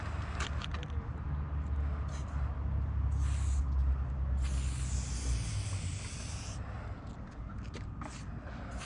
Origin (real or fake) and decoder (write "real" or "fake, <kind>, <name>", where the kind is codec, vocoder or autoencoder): real